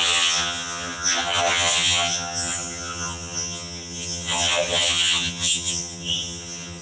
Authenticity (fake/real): fake